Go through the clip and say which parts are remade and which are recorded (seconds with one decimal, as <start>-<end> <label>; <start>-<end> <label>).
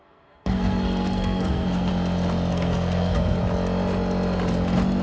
0.0-1.9 remade; 1.9-2.5 recorded; 2.5-3.4 remade; 3.4-5.0 recorded